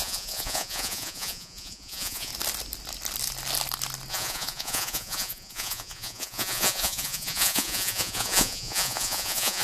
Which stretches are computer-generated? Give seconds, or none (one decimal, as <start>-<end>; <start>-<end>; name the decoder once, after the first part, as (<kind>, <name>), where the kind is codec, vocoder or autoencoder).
0.0-2.3 (vocoder, Vocos); 4.1-9.6

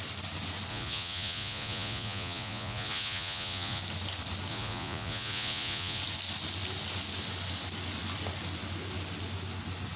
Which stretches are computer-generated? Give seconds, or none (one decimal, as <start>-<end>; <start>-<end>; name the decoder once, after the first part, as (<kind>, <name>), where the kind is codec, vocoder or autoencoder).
0.7-3.8 (vocoder, Vocos); 4.5-6.0

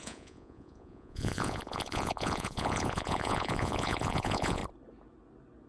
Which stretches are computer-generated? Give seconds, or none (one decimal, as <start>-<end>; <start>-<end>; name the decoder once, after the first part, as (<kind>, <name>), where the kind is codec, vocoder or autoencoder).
0.0-4.6 (vocoder, Vocos)

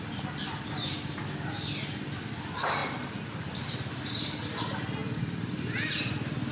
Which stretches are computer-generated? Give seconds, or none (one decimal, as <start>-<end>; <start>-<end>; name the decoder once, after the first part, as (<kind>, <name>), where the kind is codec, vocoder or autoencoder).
none